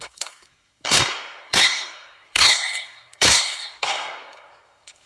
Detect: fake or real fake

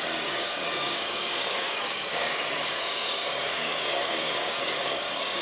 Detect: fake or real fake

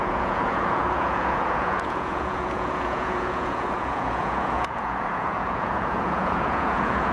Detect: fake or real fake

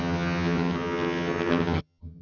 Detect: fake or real fake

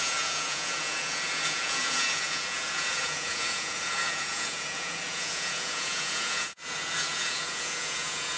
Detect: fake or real fake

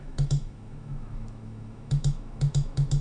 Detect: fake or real fake